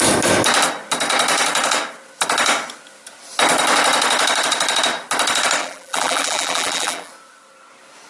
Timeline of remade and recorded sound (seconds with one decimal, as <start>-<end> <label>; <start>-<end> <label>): 0.0-5.6 recorded; 5.6-7.1 remade; 7.1-8.1 recorded